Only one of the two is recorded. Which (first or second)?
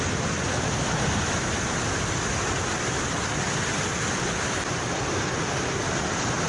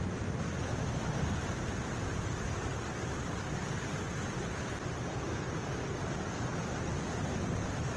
first